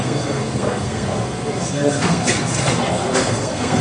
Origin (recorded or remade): remade